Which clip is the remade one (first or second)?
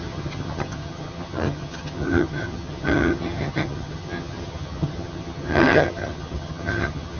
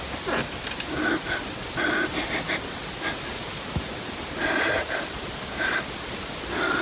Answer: first